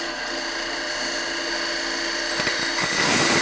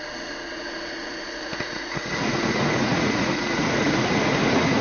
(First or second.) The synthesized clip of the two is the second